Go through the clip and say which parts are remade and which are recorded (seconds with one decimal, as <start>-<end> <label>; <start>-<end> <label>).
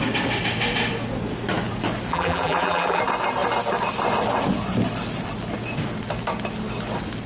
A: 0.0-2.1 recorded; 2.1-3.0 remade; 3.0-7.3 recorded